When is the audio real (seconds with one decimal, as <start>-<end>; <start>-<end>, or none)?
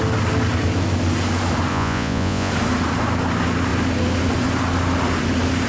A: 0.0-1.7; 2.5-5.7